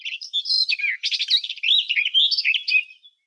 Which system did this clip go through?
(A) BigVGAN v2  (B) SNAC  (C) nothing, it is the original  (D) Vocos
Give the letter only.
C